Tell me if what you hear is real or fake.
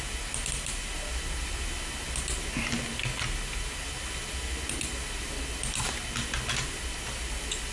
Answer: real